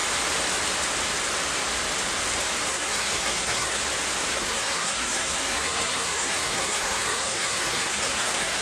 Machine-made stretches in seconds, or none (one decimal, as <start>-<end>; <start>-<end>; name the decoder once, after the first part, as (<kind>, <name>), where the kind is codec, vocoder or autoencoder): 2.7-3.8 (codec, SNAC); 4.3-8.6